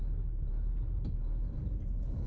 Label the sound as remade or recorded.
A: recorded